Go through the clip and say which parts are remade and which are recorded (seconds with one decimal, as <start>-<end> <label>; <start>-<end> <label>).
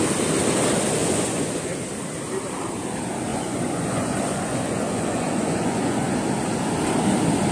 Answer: 0.0-1.0 recorded; 1.0-1.6 remade; 1.6-3.3 recorded; 3.3-6.1 remade; 6.1-7.5 recorded